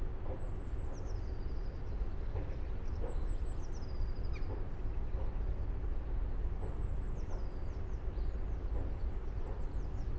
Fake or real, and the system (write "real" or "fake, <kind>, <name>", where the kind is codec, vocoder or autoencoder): real